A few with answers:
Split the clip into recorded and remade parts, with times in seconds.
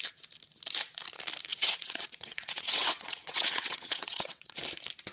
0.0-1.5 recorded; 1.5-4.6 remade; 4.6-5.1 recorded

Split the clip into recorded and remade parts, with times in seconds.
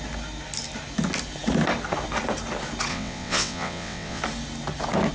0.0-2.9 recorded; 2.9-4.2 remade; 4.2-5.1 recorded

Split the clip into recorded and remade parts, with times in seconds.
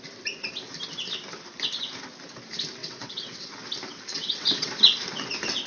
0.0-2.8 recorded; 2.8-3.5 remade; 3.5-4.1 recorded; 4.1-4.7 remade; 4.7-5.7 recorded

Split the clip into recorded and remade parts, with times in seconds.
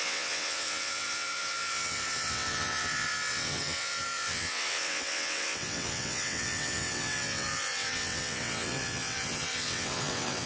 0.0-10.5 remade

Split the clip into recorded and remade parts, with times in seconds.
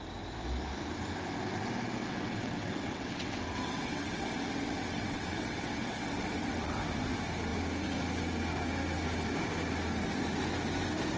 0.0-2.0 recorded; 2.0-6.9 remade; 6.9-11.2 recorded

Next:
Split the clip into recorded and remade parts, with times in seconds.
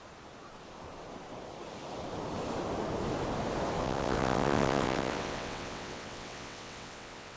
0.0-3.8 recorded; 3.8-7.4 remade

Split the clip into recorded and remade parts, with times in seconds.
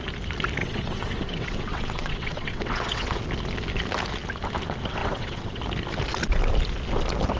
0.0-0.6 recorded; 0.6-3.2 remade; 3.2-5.0 recorded; 5.0-5.6 remade; 5.6-7.4 recorded